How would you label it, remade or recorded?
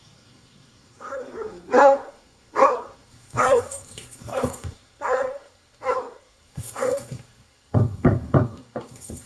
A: remade